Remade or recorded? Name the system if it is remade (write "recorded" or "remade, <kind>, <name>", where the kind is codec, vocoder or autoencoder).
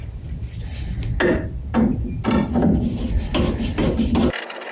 recorded